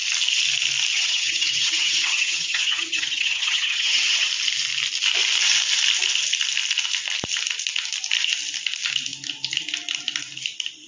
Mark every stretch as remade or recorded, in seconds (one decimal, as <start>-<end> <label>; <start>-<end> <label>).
0.0-0.9 recorded; 0.9-4.3 remade; 4.3-10.9 recorded